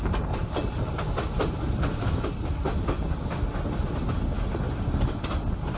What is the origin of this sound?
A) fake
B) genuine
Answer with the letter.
B